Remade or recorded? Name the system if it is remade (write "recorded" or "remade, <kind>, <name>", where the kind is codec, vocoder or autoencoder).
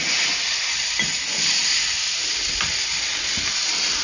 recorded